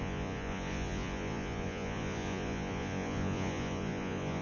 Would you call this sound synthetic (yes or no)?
yes